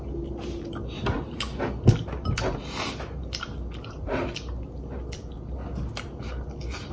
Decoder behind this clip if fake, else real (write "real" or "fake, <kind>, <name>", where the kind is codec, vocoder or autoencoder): real